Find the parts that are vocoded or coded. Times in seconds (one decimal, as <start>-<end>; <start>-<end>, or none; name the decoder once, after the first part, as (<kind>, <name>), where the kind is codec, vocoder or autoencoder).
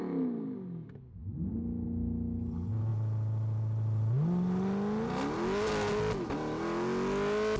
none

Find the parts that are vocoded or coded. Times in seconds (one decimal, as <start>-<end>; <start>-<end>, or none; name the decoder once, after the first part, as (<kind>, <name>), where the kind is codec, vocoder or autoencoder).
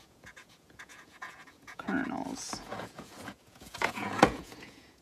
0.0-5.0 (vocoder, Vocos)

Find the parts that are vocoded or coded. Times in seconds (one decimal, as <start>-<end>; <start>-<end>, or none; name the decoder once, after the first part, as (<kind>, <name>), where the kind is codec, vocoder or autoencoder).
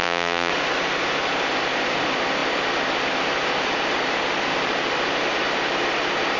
0.0-0.5 (vocoder, BigVGAN v2)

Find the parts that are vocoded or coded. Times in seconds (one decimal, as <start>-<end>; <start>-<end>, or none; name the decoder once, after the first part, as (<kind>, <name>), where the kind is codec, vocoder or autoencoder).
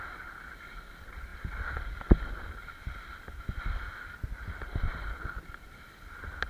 none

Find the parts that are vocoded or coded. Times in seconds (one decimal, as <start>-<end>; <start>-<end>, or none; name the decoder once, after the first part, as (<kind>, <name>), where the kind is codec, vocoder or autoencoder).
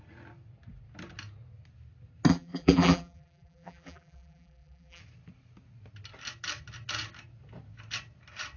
2.3-5.0 (vocoder, BigVGAN v2)